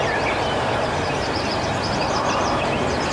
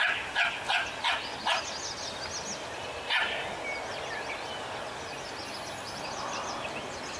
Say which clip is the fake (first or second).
first